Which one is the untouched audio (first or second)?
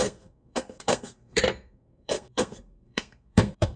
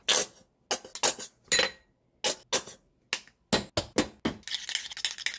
second